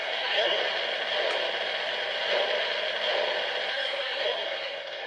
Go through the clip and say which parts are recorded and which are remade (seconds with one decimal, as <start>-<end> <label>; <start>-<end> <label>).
0.0-0.6 remade; 0.6-3.7 recorded; 3.7-5.1 remade